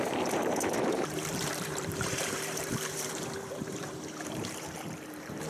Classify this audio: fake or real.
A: fake